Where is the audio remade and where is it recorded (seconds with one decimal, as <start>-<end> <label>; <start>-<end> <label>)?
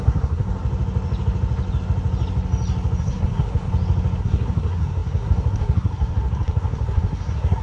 0.0-0.5 remade; 0.5-3.0 recorded; 3.0-3.7 remade; 3.7-4.2 recorded; 4.2-7.6 remade